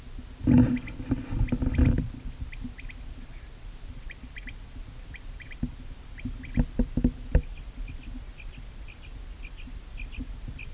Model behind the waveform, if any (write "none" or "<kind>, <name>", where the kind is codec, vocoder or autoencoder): none